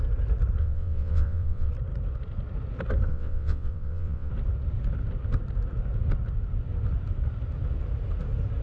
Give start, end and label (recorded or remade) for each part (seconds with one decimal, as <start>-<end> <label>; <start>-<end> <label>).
0.0-0.6 recorded; 0.6-1.7 remade; 1.7-3.1 recorded; 3.1-4.3 remade; 4.3-8.6 recorded